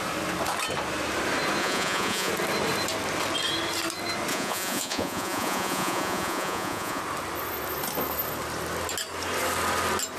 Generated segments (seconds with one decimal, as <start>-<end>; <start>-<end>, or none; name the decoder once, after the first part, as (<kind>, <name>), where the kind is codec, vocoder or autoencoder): 1.6-2.3 (vocoder, Vocos); 4.3-7.0